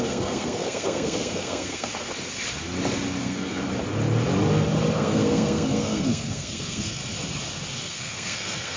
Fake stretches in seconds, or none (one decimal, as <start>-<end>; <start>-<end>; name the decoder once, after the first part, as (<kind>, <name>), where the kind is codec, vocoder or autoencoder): 0.0-1.9 (codec, SNAC); 3.2-3.6; 4.9-7.0; 7.8-8.8